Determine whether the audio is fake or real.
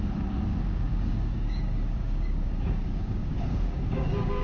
fake